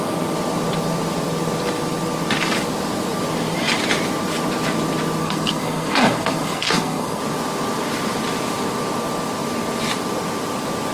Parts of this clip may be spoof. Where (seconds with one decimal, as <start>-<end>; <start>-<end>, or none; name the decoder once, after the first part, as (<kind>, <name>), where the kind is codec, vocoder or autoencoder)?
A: 5.2-7.2 (codec, SNAC)